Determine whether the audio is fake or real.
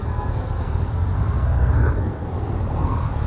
fake